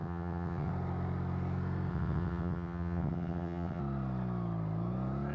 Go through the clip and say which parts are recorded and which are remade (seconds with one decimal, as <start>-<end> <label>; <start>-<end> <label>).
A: 0.0-0.7 remade; 0.7-1.9 recorded; 1.9-3.8 remade; 3.8-5.3 recorded